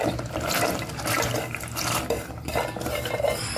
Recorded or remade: recorded